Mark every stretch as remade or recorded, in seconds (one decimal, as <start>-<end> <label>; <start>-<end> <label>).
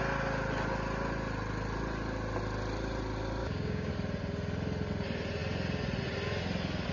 0.0-3.4 recorded; 3.4-3.9 remade; 3.9-6.9 recorded